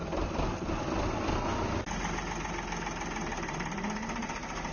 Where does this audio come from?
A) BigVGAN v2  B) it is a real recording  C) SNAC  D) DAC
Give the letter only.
B